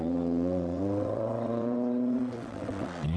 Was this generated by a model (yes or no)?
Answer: yes